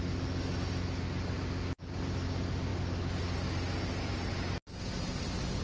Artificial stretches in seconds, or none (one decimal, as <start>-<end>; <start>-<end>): none

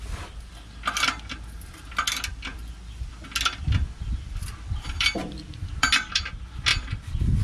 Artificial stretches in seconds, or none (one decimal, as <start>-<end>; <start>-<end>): 5.2-5.9

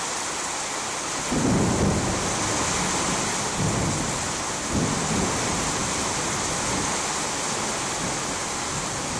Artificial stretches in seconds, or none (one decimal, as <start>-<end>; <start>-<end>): none

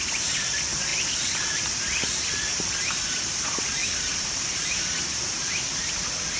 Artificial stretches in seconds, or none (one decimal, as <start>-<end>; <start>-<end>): 3.8-4.8

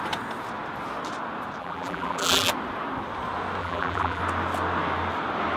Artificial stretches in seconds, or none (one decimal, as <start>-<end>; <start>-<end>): 1.6-2.5; 3.6-4.2

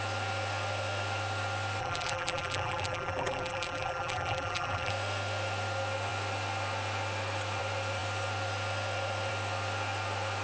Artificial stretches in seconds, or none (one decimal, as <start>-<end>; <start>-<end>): 1.8-4.9